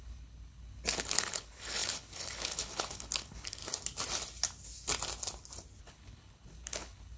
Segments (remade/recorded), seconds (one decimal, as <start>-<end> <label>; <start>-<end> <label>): 0.0-3.6 remade; 3.6-5.8 recorded; 5.8-7.2 remade